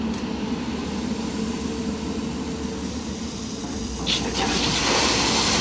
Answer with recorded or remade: recorded